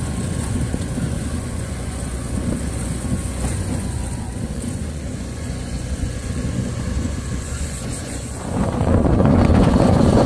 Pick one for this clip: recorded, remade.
remade